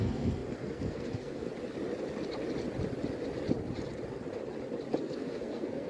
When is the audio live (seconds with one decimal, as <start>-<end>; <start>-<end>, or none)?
1.5-5.0

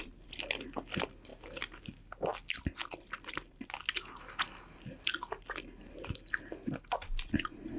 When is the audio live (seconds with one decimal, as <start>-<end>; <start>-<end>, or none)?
0.0-7.8

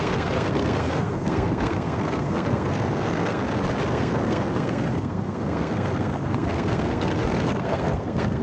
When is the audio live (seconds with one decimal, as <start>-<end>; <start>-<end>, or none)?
3.4-3.9

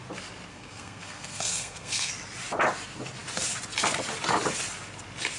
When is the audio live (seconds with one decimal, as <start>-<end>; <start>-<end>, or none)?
0.0-0.5; 2.1-5.4

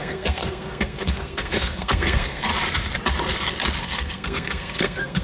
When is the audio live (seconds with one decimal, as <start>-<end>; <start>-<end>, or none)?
2.5-3.8

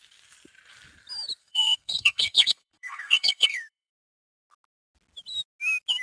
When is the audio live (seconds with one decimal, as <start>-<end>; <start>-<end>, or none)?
0.0-1.4; 3.9-6.0

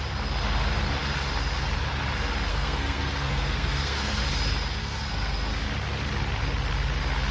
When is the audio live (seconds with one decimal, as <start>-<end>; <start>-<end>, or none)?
0.0-2.5; 4.2-4.8; 5.5-7.3